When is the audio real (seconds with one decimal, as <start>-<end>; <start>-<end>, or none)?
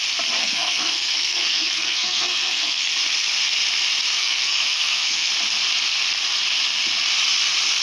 0.0-0.4; 2.9-4.2; 5.3-7.8